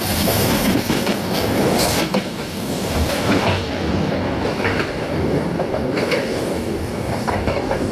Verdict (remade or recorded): remade